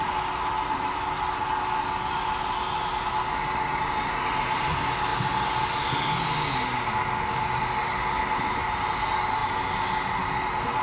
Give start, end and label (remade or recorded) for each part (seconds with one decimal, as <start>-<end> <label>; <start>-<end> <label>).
0.0-10.8 recorded